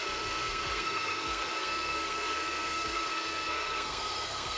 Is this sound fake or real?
fake